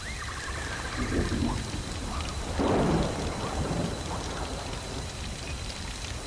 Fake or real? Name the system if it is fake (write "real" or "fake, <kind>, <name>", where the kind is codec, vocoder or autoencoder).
fake, vocoder, BigVGAN v2